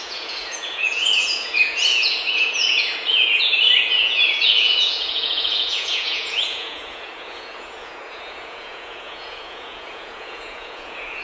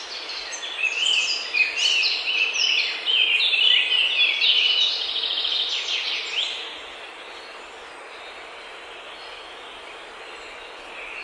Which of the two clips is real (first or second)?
second